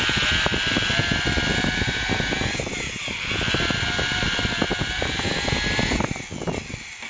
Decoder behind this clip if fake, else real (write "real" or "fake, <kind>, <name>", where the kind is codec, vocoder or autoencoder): real